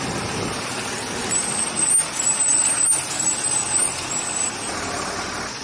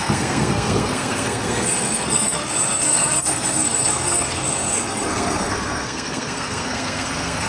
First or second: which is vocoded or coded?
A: second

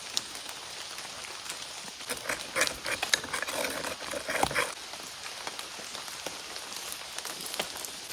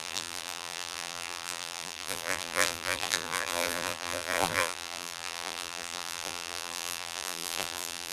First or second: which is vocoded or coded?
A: second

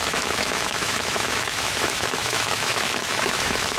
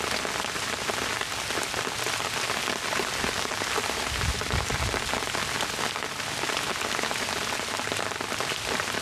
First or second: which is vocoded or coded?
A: first